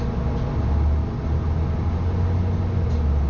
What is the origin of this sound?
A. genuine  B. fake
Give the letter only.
A